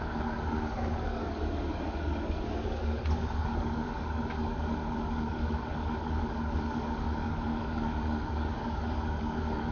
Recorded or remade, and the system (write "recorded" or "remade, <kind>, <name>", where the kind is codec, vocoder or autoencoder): remade, codec, DAC